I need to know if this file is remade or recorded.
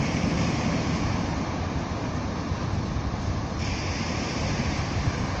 recorded